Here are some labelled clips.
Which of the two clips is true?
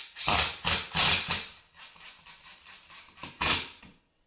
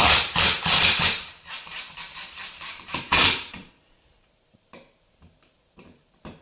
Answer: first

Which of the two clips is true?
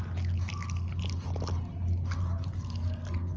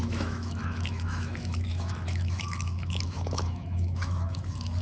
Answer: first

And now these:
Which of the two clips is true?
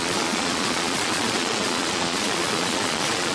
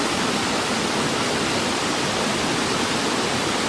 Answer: second